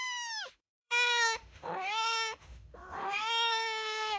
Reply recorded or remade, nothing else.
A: remade